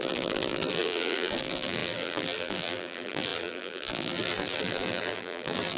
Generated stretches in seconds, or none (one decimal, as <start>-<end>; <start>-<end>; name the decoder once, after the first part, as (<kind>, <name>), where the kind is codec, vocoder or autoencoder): 0.0-5.8 (vocoder, BigVGAN v2)